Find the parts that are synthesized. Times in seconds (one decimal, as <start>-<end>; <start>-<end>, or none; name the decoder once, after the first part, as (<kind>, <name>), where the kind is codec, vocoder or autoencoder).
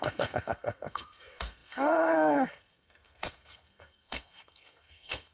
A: 0.0-5.3 (codec, SNAC)